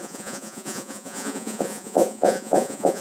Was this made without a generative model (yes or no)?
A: no